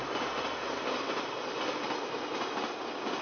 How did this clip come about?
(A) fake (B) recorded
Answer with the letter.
B